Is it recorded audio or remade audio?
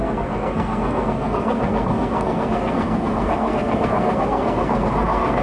remade